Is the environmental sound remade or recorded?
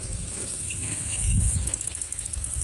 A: remade